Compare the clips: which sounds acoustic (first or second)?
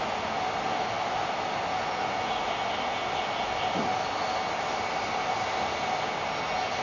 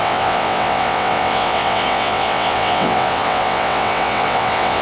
first